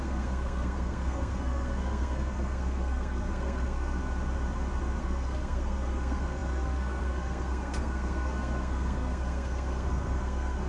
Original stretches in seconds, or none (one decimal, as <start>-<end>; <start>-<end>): 4.0-5.0